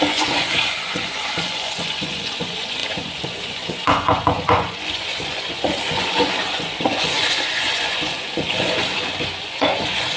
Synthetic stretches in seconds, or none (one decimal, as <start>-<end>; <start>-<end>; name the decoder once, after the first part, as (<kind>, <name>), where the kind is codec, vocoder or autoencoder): 0.0-10.2 (vocoder, Vocos)